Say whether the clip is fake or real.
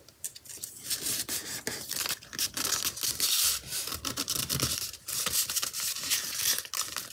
real